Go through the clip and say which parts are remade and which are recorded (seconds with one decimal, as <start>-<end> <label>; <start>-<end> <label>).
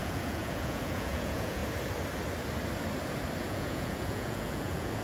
0.0-1.6 remade; 1.6-3.4 recorded; 3.4-5.0 remade